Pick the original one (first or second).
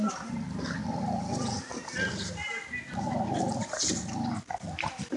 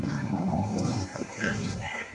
first